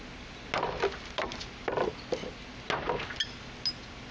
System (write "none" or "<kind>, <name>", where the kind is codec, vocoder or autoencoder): none